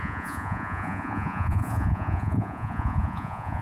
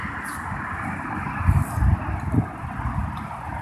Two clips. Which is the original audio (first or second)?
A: second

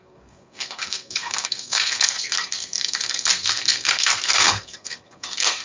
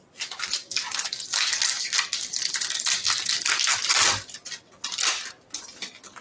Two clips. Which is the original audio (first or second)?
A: second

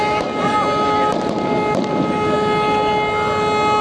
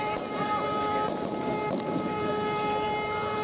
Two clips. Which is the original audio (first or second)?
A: first